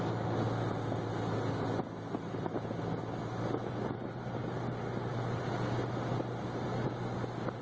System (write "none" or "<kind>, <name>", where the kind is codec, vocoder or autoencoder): none